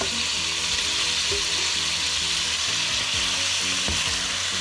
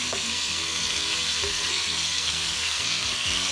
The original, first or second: first